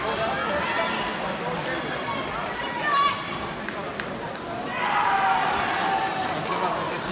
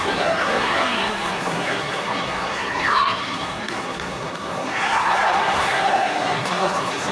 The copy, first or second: second